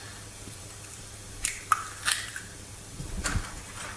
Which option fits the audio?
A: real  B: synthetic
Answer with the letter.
B